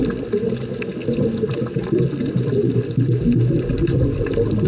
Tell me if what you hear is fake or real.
real